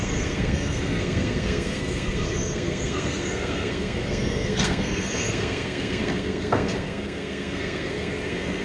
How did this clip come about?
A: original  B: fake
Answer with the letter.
B